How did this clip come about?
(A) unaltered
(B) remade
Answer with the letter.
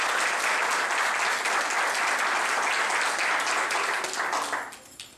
A